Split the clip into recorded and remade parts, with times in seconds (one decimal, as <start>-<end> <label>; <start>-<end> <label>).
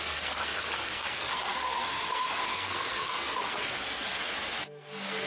0.0-5.3 remade